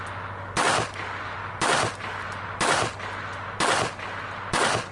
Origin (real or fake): real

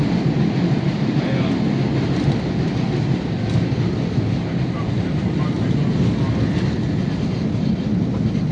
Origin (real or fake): real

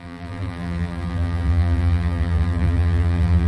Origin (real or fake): fake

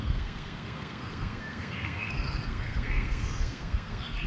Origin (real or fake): fake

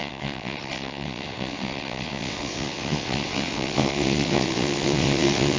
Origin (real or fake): fake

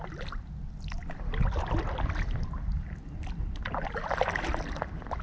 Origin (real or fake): real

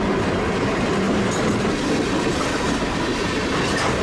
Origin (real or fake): real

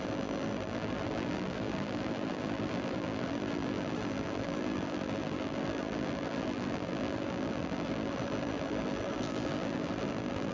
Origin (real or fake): fake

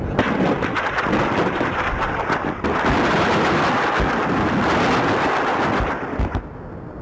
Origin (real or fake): real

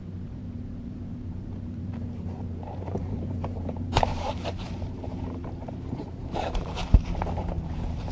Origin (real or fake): fake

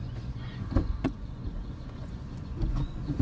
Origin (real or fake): fake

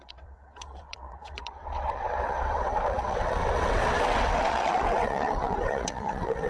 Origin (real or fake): fake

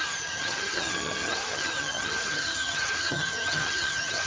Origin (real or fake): fake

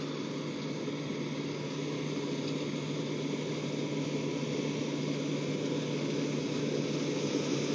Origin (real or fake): real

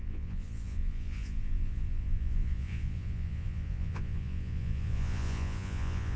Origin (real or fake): fake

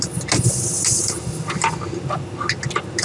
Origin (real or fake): real